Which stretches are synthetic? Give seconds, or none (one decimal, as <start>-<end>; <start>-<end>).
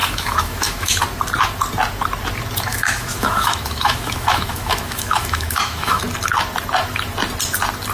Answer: 0.0-1.0; 2.7-6.0